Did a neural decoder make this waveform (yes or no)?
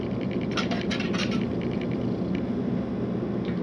no